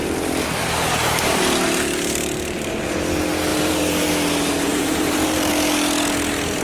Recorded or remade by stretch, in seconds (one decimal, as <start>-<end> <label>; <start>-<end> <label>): 0.0-1.4 remade; 1.4-3.5 recorded; 3.5-4.1 remade; 4.1-4.7 recorded; 4.7-5.5 remade; 5.5-6.6 recorded